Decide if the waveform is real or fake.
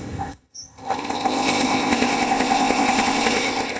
fake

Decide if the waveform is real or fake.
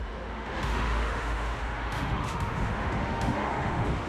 fake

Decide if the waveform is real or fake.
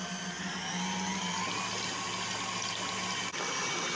real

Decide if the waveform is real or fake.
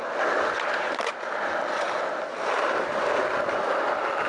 real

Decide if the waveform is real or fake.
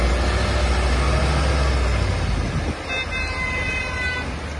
real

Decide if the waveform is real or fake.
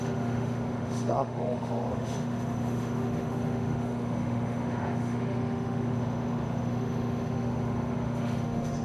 fake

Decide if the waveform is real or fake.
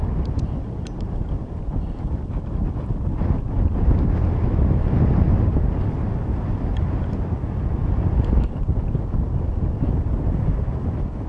real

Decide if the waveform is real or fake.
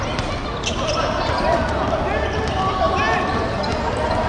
real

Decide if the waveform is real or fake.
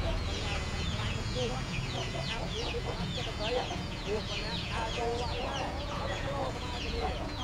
fake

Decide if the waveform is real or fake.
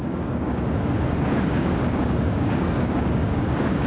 fake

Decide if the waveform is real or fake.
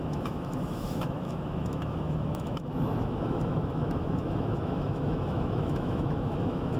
fake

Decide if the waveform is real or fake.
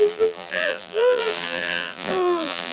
fake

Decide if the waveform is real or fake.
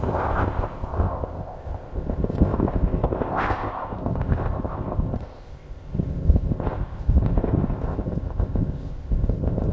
fake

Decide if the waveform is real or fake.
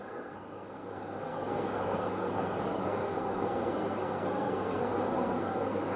fake